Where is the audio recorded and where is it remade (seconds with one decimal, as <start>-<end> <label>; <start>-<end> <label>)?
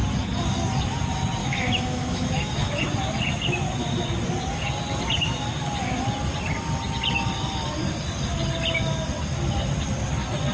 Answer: 0.0-1.4 recorded; 1.4-2.8 remade; 2.8-10.5 recorded